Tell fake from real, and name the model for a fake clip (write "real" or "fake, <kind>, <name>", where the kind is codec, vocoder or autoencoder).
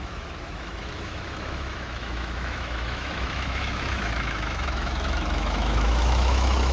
fake, autoencoder, DAC-VAE